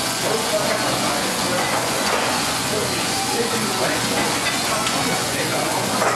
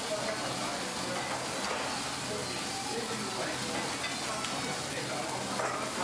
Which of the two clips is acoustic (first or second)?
second